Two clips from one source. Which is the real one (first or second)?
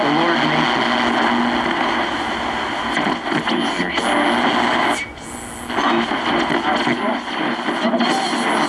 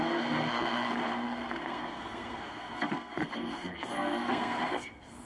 first